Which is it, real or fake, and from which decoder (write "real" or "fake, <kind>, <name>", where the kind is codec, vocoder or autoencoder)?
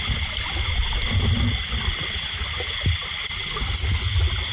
real